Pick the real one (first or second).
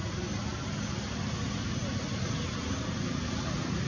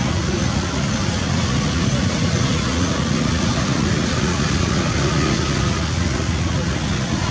first